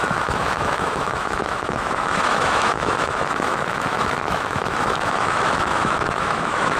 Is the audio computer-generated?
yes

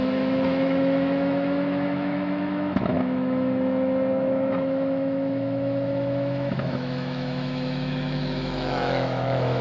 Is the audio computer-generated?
yes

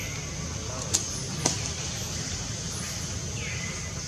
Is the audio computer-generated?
no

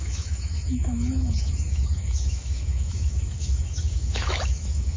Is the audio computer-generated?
yes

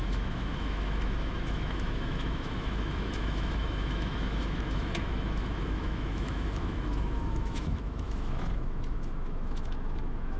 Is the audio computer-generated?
yes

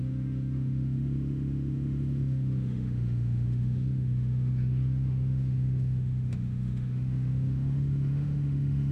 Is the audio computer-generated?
yes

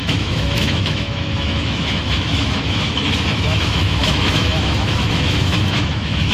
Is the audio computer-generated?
yes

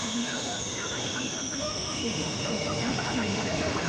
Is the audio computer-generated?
yes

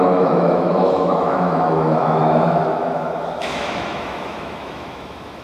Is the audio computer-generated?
yes